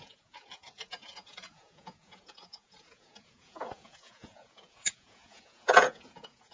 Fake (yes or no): yes